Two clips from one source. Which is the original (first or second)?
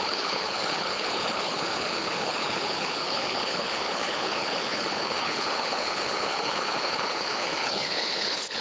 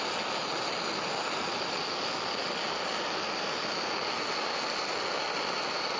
second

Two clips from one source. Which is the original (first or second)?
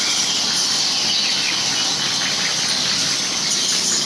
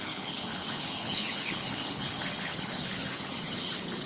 first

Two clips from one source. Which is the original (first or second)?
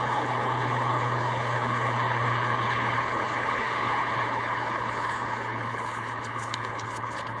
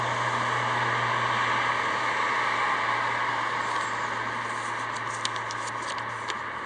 second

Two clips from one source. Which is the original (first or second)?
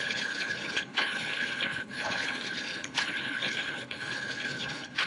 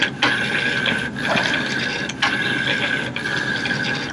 second